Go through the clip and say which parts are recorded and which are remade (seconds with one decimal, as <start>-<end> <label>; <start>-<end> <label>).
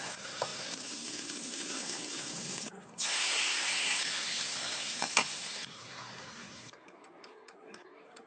0.0-8.3 remade